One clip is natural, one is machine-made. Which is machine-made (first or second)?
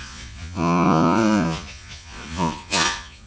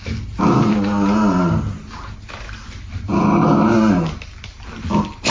first